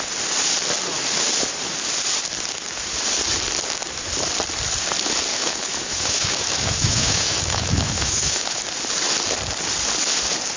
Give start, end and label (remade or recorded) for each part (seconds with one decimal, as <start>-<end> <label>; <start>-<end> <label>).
0.0-5.3 recorded; 5.3-8.6 remade; 8.6-10.6 recorded